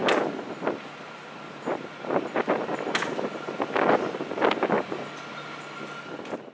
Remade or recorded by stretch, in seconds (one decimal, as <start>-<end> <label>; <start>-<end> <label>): 0.0-6.5 recorded